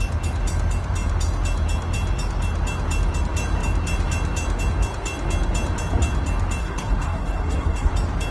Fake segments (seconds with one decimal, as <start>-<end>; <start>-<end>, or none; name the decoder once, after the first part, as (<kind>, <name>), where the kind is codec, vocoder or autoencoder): 6.6-7.9 (codec, SNAC)